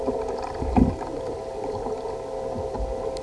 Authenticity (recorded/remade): recorded